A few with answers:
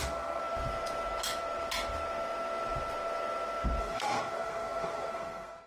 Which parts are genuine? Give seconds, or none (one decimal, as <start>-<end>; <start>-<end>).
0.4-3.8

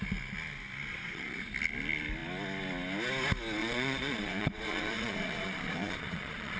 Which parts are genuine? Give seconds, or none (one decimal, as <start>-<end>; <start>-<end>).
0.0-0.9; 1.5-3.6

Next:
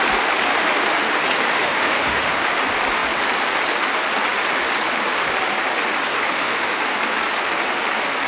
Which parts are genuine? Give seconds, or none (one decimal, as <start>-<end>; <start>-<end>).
0.0-1.5; 2.3-6.1; 6.8-8.3

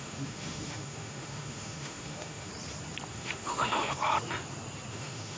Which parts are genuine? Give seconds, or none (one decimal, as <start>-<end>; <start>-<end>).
2.5-3.1; 4.0-4.9

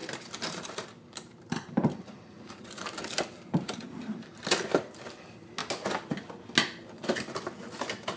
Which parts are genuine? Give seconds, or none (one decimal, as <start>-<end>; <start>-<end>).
4.3-8.2

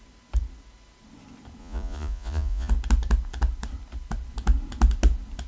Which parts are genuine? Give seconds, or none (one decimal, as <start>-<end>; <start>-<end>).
0.0-1.6; 2.7-5.5

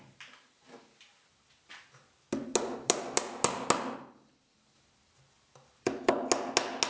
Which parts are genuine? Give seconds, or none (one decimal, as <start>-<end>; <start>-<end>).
0.0-6.9